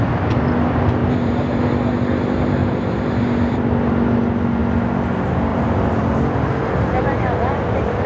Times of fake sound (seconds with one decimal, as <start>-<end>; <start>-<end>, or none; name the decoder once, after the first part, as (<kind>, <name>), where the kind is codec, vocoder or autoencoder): 1.0-1.7 (vocoder, BigVGAN v2); 2.6-3.1; 5.5-6.0